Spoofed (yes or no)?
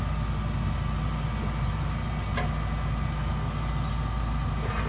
no